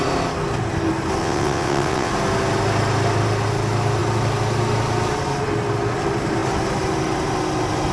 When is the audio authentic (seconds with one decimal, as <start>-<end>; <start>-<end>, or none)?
0.0-1.2; 2.1-7.9